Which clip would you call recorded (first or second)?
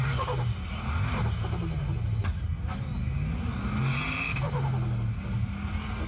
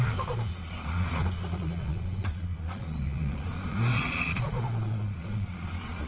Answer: first